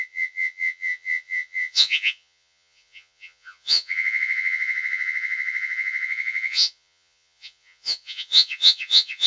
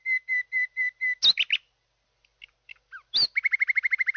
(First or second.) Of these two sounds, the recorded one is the second